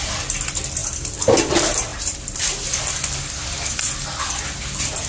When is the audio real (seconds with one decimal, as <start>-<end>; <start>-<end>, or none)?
0.0-0.8; 1.4-5.1